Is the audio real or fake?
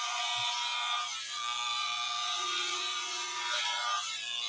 fake